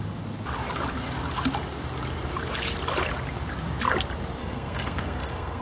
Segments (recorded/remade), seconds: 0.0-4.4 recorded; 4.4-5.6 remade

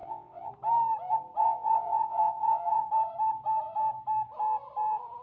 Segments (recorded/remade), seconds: 0.0-0.5 remade; 0.5-1.4 recorded; 1.4-2.9 remade; 2.9-5.2 recorded

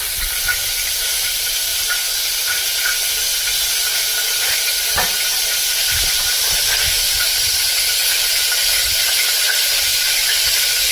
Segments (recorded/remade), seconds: 0.0-1.7 remade; 1.7-5.4 recorded; 5.4-8.0 remade; 8.0-9.1 recorded; 9.1-9.9 remade; 9.9-10.5 recorded; 10.5-10.9 remade

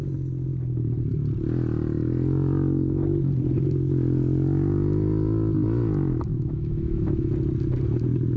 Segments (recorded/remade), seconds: 0.0-6.3 recorded; 6.3-7.3 remade; 7.3-8.4 recorded

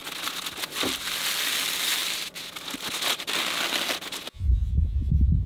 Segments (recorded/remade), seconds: 0.0-5.5 recorded

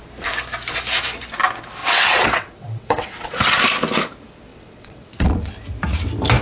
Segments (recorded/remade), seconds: 0.0-1.8 recorded; 1.8-3.5 remade; 3.5-4.5 recorded; 4.5-5.5 remade; 5.5-6.4 recorded

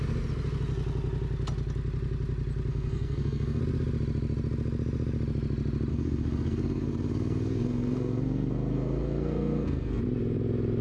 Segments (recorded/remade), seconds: 0.0-2.7 recorded; 2.7-3.6 remade; 3.6-5.9 recorded; 5.9-10.0 remade; 10.0-10.8 recorded

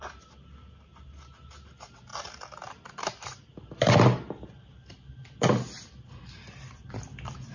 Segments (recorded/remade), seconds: 0.0-7.5 recorded